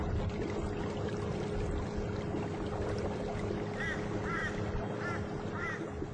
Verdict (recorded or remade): recorded